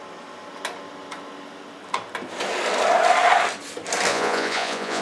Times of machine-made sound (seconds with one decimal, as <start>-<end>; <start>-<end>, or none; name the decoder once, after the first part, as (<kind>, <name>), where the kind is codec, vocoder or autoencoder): 4.1-5.0 (vocoder, Vocos)